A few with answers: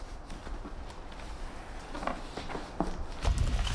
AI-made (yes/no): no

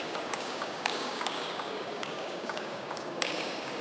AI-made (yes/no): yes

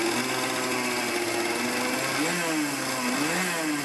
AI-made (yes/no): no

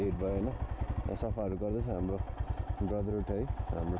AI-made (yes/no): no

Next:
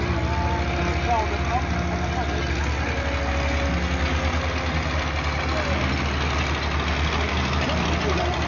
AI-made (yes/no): no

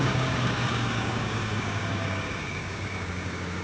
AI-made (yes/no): yes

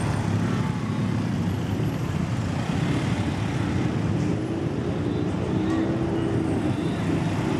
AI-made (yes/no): no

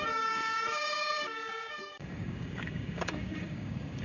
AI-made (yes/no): yes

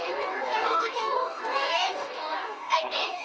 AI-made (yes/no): yes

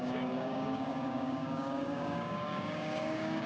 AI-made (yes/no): yes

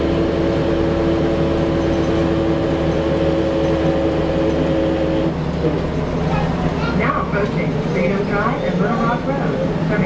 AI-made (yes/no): no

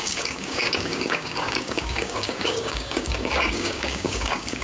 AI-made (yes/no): yes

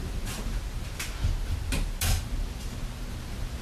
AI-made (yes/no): no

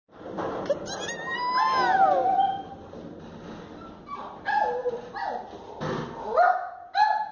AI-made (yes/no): no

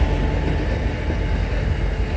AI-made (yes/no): no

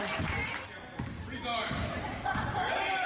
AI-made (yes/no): no